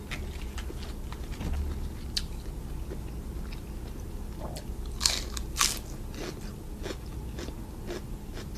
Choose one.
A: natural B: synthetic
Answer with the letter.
A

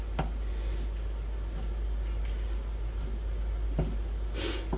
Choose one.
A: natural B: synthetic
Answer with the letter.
A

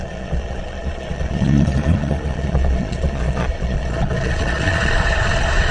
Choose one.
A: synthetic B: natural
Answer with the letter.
A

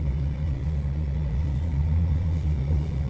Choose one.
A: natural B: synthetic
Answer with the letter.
B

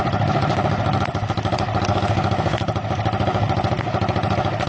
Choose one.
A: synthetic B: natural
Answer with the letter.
B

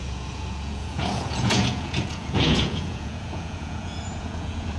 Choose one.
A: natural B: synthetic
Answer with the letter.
B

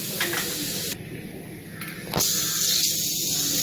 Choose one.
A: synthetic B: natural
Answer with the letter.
B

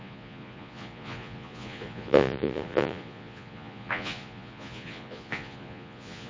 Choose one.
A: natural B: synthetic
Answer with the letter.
B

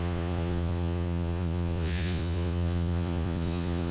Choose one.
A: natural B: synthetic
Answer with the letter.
B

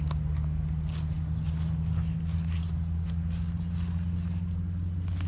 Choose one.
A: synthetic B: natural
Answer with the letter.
B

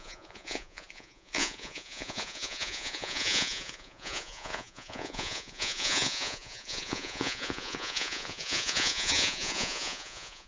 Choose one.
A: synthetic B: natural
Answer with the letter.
A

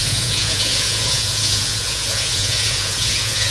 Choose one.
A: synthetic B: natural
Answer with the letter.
A